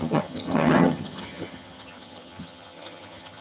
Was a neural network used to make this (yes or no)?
yes